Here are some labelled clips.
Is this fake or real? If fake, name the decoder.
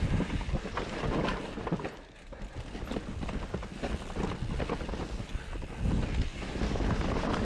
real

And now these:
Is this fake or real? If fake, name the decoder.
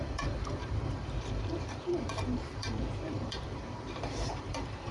fake, vocoder, BigVGAN v2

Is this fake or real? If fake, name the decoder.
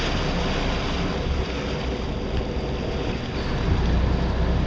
real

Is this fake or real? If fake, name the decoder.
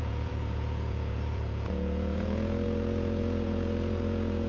fake, vocoder, Vocos